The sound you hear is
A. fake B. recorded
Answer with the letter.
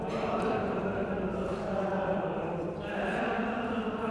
A